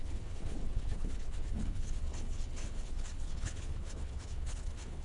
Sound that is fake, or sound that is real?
fake